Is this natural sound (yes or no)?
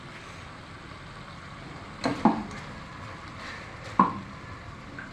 yes